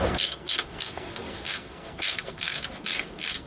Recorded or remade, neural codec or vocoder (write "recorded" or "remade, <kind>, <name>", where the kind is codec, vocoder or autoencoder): remade, codec, SNAC